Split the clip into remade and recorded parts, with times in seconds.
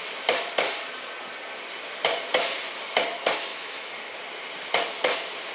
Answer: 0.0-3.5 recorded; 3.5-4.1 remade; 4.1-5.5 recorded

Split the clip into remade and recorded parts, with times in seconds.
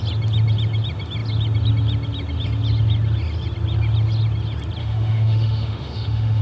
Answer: 0.0-4.8 recorded; 4.8-6.4 remade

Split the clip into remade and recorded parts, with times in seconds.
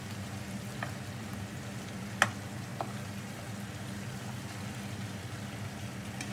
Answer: 0.0-6.3 recorded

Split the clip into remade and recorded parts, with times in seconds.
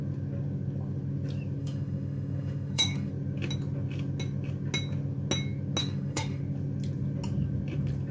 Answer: 0.0-1.6 recorded; 1.6-3.1 remade; 3.1-5.8 recorded; 5.8-6.4 remade; 6.4-8.1 recorded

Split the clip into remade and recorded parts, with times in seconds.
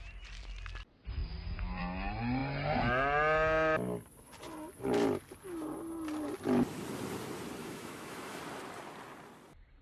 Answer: 0.0-7.6 recorded; 7.6-8.4 remade; 8.4-9.8 recorded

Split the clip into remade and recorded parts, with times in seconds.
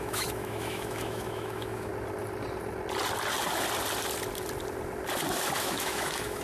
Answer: 0.0-1.9 remade; 1.9-5.6 recorded; 5.6-6.4 remade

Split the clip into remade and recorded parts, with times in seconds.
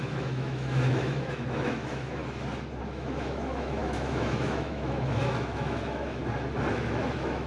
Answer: 0.0-2.2 remade; 2.2-2.8 recorded; 2.8-6.2 remade; 6.2-6.7 recorded; 6.7-7.5 remade